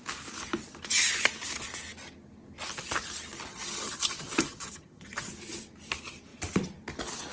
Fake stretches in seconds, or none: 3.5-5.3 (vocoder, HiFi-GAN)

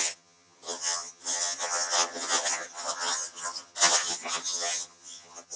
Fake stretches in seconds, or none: 0.0-5.6 (vocoder, HiFi-GAN)

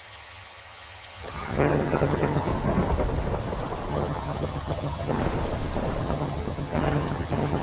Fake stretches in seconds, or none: 0.0-2.5 (vocoder, HiFi-GAN); 3.9-5.2; 6.0-7.6

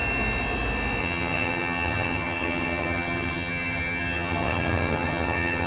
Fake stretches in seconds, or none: 1.0-5.7 (vocoder, HiFi-GAN)

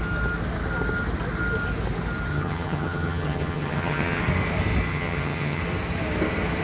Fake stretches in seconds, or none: 2.3-4.2 (vocoder, HiFi-GAN); 4.9-5.6

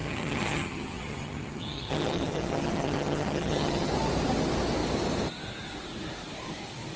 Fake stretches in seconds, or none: 0.0-3.9 (vocoder, HiFi-GAN)